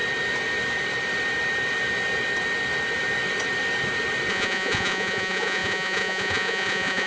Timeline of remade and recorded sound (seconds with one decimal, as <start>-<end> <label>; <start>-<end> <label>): 0.0-4.3 recorded; 4.3-7.1 remade